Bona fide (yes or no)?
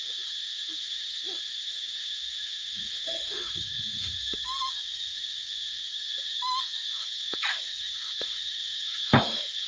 no